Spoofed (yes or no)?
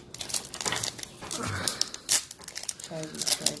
no